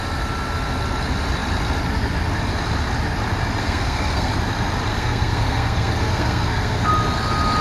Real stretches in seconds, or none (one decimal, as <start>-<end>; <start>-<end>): 0.0-3.6; 4.3-4.9; 6.9-7.6